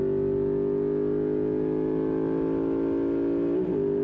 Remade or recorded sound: recorded